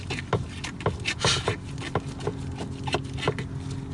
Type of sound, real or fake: real